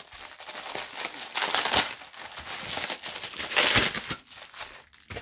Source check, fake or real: real